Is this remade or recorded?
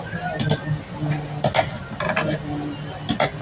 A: recorded